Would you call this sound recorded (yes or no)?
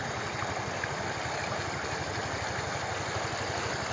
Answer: yes